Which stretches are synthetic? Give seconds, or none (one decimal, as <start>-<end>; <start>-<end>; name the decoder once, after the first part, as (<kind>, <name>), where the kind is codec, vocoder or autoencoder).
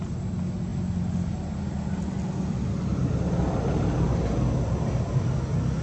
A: none